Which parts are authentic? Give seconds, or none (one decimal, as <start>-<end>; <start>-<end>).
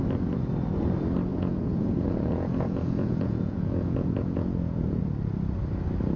0.0-1.3; 5.0-6.2